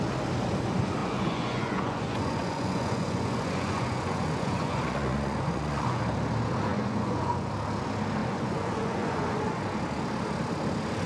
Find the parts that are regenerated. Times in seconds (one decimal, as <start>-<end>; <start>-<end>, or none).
1.0-6.0; 6.7-7.5; 8.2-9.6